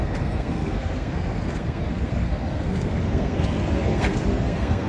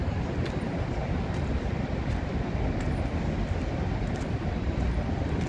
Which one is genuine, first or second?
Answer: second